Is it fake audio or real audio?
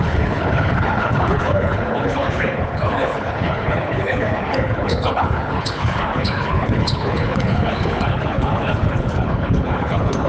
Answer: fake